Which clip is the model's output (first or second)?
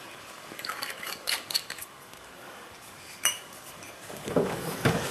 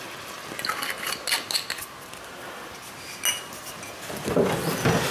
first